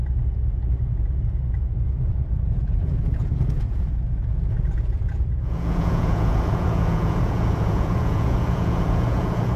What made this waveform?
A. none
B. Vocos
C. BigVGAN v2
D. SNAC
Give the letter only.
B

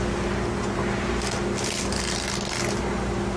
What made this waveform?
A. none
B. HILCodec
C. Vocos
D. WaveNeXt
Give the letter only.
A